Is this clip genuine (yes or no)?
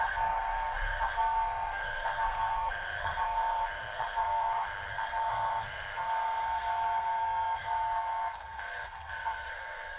no